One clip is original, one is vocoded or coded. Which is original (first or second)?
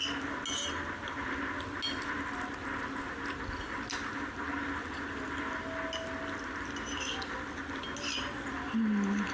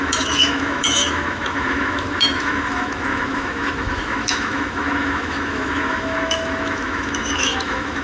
first